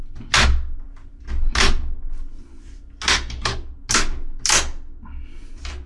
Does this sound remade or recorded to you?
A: recorded